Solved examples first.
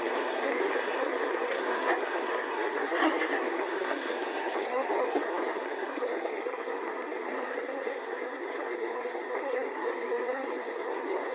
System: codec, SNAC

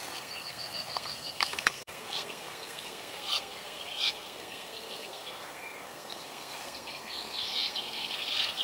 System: codec, SNAC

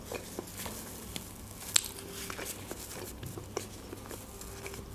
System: none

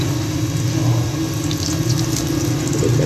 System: none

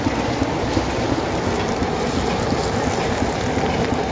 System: none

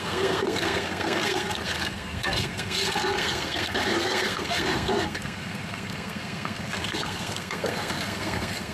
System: codec, SNAC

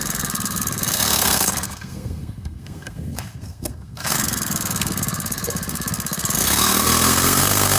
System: codec, SNAC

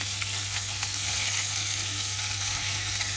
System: codec, SNAC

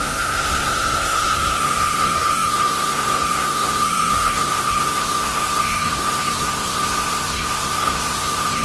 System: codec, SNAC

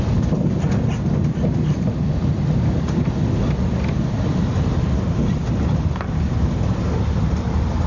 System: none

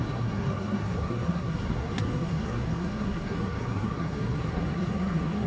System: codec, SNAC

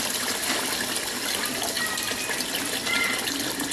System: none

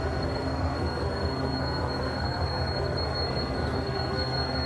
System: codec, SNAC